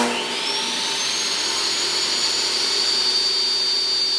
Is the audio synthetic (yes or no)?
no